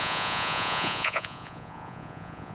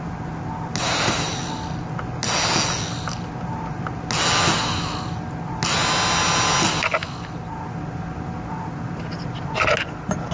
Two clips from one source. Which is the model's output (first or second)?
first